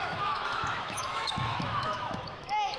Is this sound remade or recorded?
remade